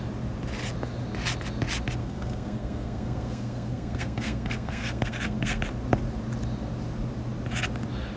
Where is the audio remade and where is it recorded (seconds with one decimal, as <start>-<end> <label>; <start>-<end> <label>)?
0.0-2.0 recorded; 2.0-5.6 remade; 5.6-8.2 recorded